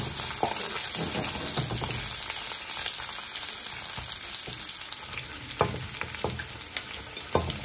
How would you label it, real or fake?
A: real